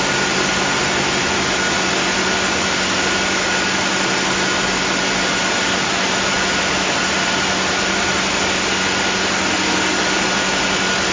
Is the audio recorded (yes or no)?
yes